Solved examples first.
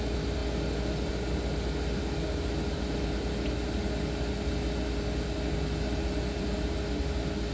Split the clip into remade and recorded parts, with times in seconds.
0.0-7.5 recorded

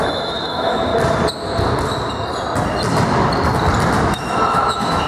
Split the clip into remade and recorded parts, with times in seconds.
0.0-0.9 remade; 0.9-4.0 recorded; 4.0-5.1 remade